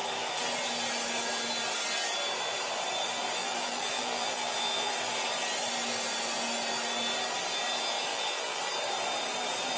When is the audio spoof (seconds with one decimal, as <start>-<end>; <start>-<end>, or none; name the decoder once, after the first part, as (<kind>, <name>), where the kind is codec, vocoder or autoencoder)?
3.4-4.9 (vocoder, BigVGAN v2); 8.1-8.6

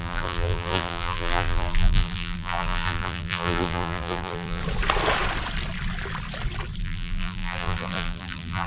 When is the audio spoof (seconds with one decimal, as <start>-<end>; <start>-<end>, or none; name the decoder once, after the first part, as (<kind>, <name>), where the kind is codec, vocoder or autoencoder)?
0.0-4.6 (vocoder, BigVGAN v2); 6.8-8.7

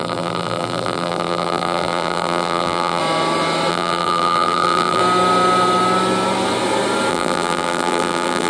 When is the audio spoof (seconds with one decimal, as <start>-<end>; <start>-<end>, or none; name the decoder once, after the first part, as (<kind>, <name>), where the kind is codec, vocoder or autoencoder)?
0.0-3.0 (vocoder, BigVGAN v2); 3.7-5.0; 7.1-8.5